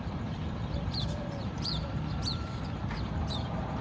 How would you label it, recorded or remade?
remade